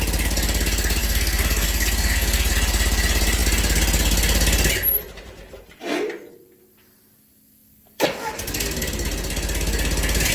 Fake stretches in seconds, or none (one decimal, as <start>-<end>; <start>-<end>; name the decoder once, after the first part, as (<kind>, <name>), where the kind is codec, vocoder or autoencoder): 1.0-2.5 (codec, SNAC)